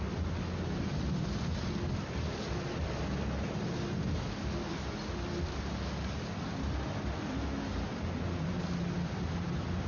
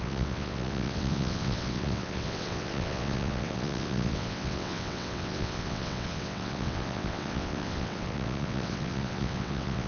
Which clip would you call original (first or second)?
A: first